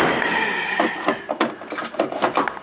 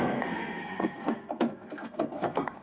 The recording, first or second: first